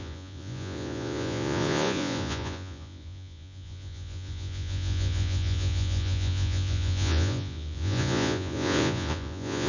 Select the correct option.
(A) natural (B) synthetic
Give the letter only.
B